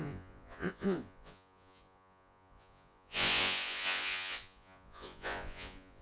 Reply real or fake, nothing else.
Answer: fake